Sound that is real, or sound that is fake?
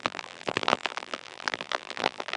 fake